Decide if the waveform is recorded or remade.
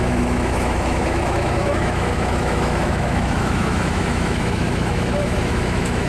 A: remade